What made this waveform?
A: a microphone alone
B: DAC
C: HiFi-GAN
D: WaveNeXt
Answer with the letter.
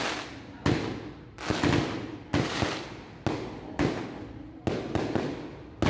A